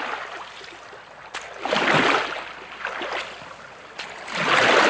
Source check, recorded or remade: recorded